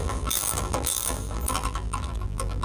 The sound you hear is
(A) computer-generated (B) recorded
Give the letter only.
A